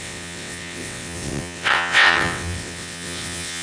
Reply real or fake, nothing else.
fake